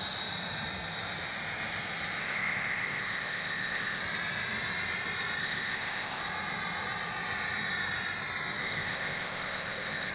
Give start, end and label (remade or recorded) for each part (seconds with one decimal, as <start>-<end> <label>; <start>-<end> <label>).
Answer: 0.0-2.2 recorded; 2.2-4.0 remade; 4.0-5.4 recorded; 5.4-6.2 remade; 6.2-8.6 recorded; 8.6-10.1 remade